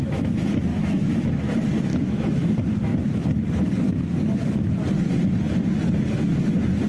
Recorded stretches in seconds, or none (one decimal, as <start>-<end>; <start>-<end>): 0.0-0.7; 1.3-1.9; 2.5-6.9